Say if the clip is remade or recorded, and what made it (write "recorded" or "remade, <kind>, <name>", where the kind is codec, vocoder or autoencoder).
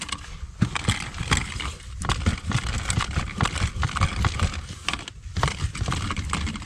recorded